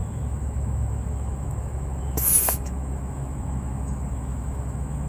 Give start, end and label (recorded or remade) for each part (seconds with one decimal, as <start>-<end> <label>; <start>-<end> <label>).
0.0-5.1 remade